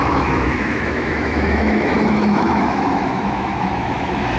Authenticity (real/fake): fake